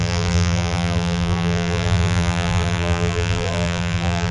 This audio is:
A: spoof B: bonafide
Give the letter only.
A